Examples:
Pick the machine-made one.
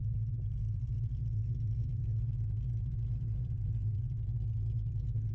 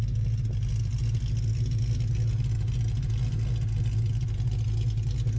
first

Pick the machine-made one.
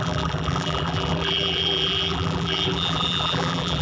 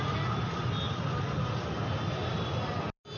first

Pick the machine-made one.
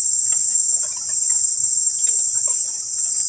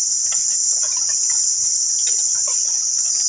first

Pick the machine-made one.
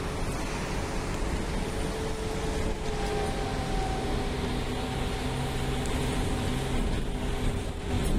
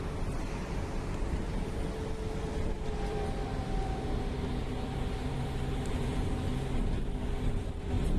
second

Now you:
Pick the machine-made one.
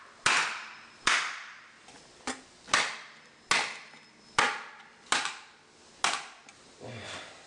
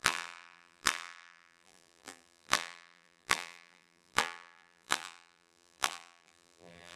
second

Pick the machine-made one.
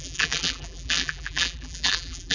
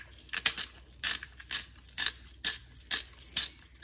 first